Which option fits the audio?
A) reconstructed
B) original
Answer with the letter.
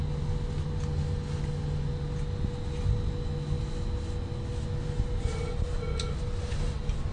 B